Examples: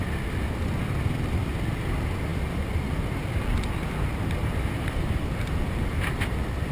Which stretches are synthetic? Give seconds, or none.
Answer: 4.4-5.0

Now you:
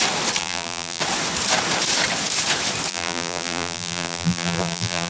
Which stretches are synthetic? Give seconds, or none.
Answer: 0.4-1.0; 2.9-5.1

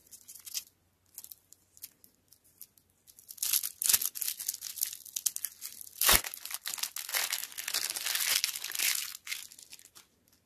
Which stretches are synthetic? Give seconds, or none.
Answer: none